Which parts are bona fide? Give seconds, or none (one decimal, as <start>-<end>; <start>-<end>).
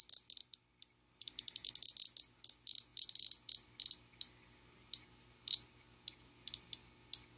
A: 0.0-0.4; 1.7-7.4